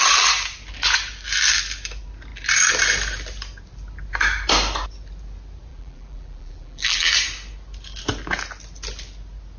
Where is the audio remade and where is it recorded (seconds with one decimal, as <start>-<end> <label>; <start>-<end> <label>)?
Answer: 0.0-5.7 recorded; 5.7-7.1 remade; 7.1-9.6 recorded

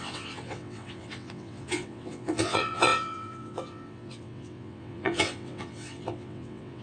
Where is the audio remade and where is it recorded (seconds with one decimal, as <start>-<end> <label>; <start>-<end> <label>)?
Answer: 0.0-6.8 remade

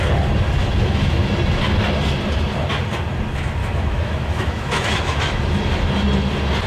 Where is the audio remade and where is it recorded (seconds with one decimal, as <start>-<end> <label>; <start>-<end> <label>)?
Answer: 0.0-0.6 recorded; 0.6-1.3 remade; 1.3-3.6 recorded; 3.6-5.6 remade; 5.6-6.7 recorded

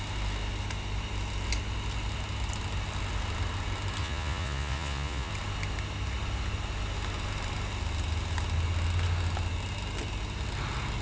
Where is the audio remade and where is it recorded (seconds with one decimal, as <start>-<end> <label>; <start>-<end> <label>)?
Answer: 0.0-4.0 recorded; 4.0-5.3 remade; 5.3-11.0 recorded